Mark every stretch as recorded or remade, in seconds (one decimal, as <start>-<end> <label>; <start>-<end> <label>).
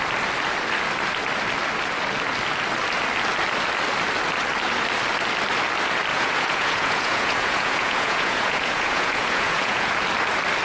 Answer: 0.0-6.1 recorded; 6.1-9.9 remade; 9.9-10.6 recorded